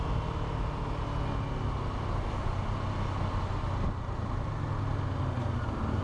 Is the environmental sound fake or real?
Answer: real